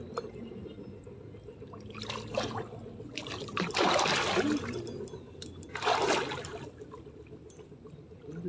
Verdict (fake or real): real